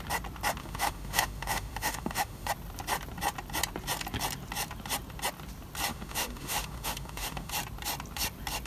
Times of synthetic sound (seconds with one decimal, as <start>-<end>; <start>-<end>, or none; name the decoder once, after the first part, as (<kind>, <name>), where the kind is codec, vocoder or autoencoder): 0.6-2.5 (autoencoder, DAC-VAE); 5.9-7.5